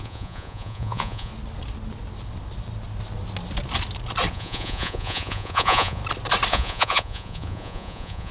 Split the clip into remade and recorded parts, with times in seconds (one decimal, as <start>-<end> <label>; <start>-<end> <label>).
0.0-1.3 remade; 1.3-4.3 recorded; 4.3-6.0 remade; 6.0-6.5 recorded; 6.5-8.3 remade